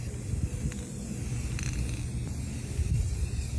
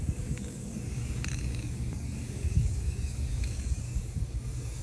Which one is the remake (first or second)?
second